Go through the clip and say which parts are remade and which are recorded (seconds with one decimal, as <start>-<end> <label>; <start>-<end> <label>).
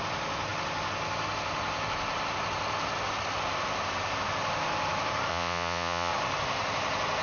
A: 0.0-5.3 recorded; 5.3-6.1 remade; 6.1-7.2 recorded